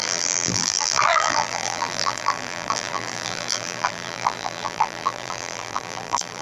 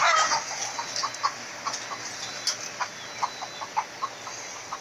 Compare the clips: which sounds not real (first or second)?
first